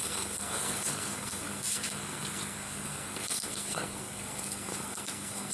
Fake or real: fake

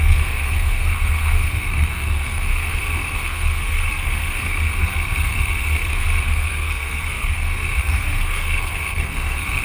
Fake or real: fake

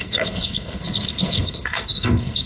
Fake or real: fake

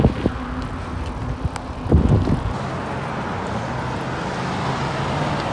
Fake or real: real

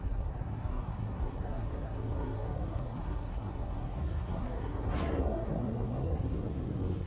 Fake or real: fake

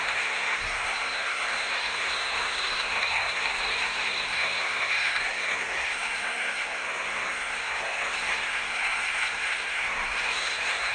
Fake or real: fake